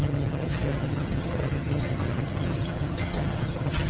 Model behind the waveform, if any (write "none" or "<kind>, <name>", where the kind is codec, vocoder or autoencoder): vocoder, HiFi-GAN